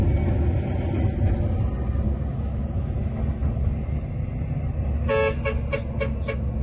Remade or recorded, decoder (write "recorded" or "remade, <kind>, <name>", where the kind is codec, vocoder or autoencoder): recorded